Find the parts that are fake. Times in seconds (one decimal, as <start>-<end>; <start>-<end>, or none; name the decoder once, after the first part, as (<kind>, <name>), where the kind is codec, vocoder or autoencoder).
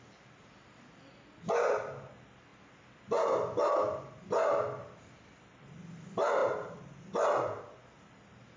none